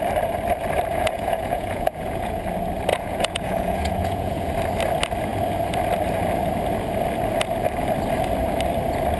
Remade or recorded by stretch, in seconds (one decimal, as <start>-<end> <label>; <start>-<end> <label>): 0.0-0.9 recorded; 0.9-2.4 remade; 2.4-2.9 recorded; 2.9-4.5 remade; 4.5-9.2 recorded